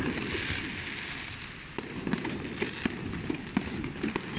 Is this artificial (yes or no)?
no